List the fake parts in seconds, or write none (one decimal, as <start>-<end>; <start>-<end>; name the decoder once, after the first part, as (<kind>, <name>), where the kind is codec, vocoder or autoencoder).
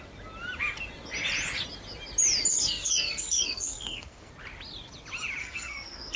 2.5-4.3 (codec, SNAC); 5.4-6.2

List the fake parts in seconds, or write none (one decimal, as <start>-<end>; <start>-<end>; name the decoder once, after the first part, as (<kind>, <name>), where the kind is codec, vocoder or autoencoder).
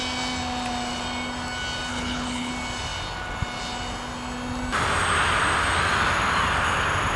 1.9-2.5 (codec, HILCodec)